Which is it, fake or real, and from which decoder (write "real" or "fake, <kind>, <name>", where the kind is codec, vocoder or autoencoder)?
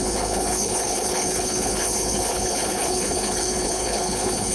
fake, codec, HILCodec